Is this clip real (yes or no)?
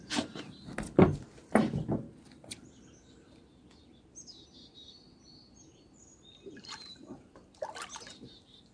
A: yes